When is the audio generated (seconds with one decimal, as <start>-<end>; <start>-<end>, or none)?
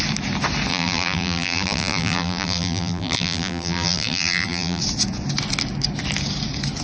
0.7-4.8